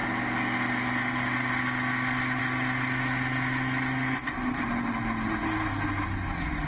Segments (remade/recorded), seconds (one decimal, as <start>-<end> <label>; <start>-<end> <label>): 0.0-6.7 recorded

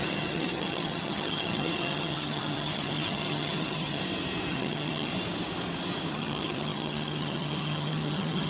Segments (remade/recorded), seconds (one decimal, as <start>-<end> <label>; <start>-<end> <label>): 0.0-4.0 remade; 4.0-4.5 recorded; 4.5-5.1 remade; 5.1-6.1 recorded; 6.1-8.5 remade

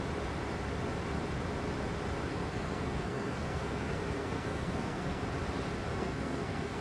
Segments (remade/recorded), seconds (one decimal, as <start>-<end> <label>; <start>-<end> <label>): 0.0-2.3 recorded; 2.3-5.2 remade; 5.2-5.9 recorded; 5.9-6.8 remade

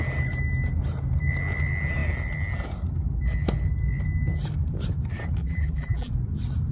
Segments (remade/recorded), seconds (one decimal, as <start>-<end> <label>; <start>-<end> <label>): 0.0-5.4 recorded; 5.4-6.1 remade; 6.1-6.7 recorded

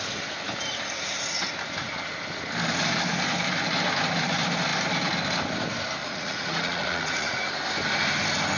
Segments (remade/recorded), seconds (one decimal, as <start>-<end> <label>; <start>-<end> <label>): 0.0-6.0 recorded; 6.0-7.5 remade; 7.5-8.6 recorded